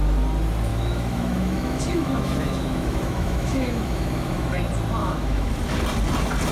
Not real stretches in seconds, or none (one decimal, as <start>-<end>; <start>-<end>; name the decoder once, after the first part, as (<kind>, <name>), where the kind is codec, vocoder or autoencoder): 0.7-4.6 (autoencoder, DAC-VAE); 5.0-5.5